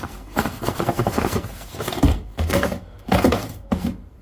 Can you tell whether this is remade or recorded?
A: remade